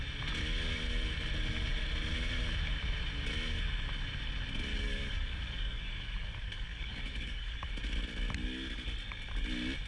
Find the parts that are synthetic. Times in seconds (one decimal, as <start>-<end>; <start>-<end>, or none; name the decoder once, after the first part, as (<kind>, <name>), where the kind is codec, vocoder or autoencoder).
4.7-7.7 (codec, DAC)

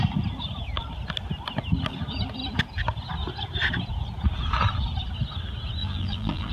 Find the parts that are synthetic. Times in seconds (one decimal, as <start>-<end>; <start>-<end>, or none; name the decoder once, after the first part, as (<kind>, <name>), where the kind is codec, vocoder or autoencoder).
5.8-6.5 (vocoder, BigVGAN v2)